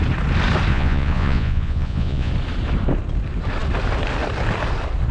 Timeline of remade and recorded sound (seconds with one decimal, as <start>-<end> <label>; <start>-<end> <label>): 0.0-0.7 recorded; 0.7-2.3 remade; 2.3-5.1 recorded